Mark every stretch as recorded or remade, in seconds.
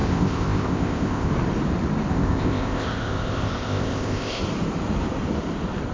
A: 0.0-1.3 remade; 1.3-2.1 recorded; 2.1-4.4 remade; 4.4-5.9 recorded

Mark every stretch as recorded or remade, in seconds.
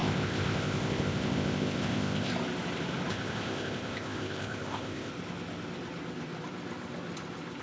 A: 0.0-2.3 remade; 2.3-3.1 recorded; 3.1-5.1 remade; 5.1-7.6 recorded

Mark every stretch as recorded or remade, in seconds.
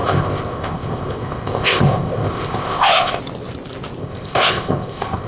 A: 0.0-3.2 remade; 3.2-4.0 recorded; 4.0-5.3 remade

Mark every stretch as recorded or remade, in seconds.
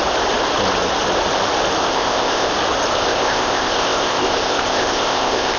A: 0.0-1.8 recorded; 1.8-2.5 remade; 2.5-2.9 recorded; 2.9-5.6 remade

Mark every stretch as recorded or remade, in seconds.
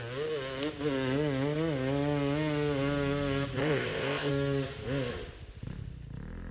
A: 0.0-3.6 recorded; 3.6-4.3 remade; 4.3-6.5 recorded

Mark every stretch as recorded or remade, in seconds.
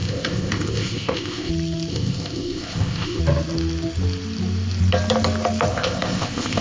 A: 0.0-1.5 remade; 1.5-1.9 recorded; 1.9-3.2 remade; 3.2-5.7 recorded; 5.7-6.6 remade